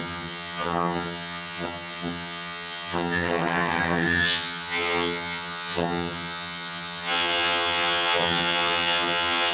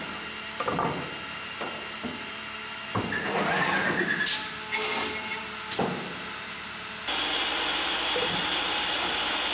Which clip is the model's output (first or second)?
first